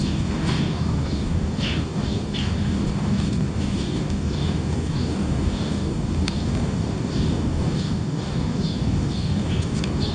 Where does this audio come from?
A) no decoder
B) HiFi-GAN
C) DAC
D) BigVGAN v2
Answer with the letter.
C